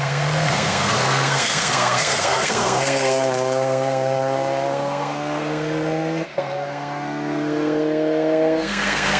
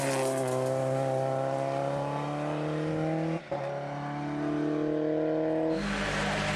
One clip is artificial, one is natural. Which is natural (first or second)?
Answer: second